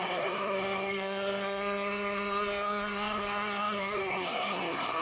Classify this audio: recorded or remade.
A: remade